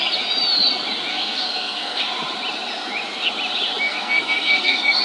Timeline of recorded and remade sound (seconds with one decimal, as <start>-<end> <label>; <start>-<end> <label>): 0.0-1.1 recorded; 1.1-2.0 remade; 2.0-3.9 recorded; 3.9-5.0 remade